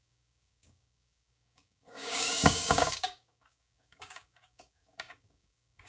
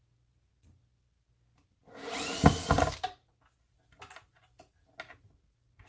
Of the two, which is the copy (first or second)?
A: first